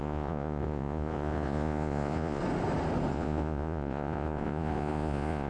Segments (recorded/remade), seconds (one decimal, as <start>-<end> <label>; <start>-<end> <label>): 0.0-2.4 remade; 2.4-3.1 recorded; 3.1-5.5 remade